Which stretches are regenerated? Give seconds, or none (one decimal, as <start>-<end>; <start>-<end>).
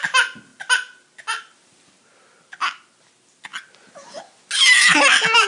none